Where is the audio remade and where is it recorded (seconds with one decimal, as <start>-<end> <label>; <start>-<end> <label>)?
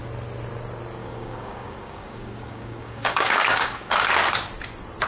0.0-1.0 recorded; 1.0-4.1 remade; 4.1-5.1 recorded